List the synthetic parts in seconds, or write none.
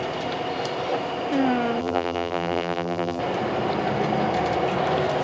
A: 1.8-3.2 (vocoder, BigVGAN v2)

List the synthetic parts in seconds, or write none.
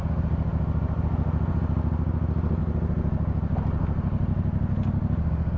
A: none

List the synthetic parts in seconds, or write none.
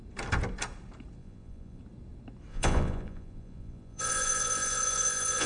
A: 1.2-1.8 (vocoder, Vocos); 2.5-5.5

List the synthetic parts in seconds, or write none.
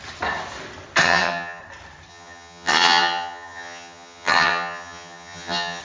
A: 1.0-1.6 (vocoder, HiFi-GAN); 2.1-5.8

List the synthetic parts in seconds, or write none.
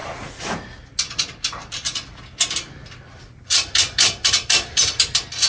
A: 0.0-0.5 (vocoder, BigVGAN v2); 1.6-4.9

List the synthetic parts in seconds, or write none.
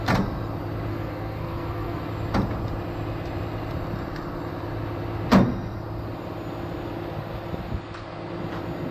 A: 0.9-2.0 (codec, SNAC)